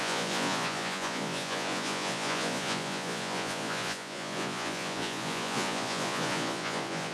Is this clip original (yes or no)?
no